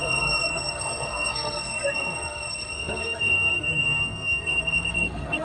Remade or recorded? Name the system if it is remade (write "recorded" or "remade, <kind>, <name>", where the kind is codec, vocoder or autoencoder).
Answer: remade, codec, SNAC